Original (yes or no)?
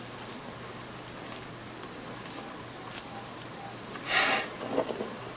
yes